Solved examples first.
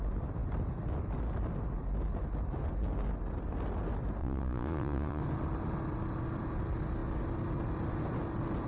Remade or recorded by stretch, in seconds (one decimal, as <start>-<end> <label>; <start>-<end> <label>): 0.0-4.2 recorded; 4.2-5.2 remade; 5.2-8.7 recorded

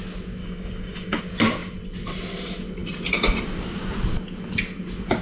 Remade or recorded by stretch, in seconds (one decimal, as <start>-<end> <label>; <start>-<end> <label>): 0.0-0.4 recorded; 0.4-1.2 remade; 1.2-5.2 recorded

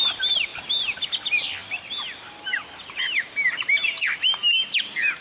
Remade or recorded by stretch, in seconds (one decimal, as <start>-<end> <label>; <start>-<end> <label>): 0.0-0.5 recorded; 0.5-1.1 remade; 1.1-5.2 recorded

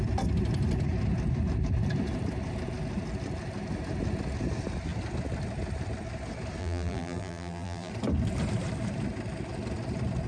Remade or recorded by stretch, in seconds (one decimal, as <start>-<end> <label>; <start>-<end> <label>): 0.0-6.6 recorded; 6.6-7.9 remade; 7.9-10.3 recorded

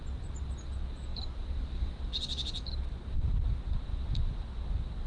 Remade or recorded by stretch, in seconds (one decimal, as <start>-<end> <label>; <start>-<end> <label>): 0.0-1.1 recorded; 1.1-1.7 remade; 1.7-5.1 recorded

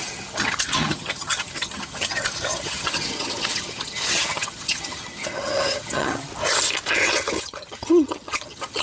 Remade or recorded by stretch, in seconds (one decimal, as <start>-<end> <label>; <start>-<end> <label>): 0.0-6.3 remade; 6.3-6.9 recorded; 6.9-8.8 remade

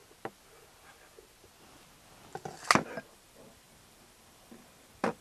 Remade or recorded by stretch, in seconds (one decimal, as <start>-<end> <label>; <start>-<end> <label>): 0.0-3.1 recorded; 3.1-5.2 remade

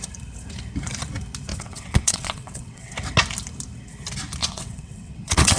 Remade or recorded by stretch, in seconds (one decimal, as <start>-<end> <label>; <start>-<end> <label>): 0.0-1.5 recorded; 1.5-2.9 remade; 2.9-4.4 recorded; 4.4-5.6 remade